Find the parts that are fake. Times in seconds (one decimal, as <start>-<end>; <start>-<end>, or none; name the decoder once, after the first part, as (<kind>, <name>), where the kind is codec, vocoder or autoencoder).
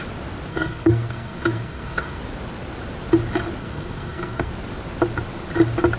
0.5-2.2 (codec, SNAC); 3.6-4.5